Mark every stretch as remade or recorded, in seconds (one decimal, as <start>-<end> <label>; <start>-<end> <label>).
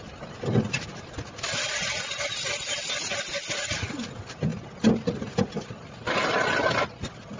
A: 0.0-7.4 recorded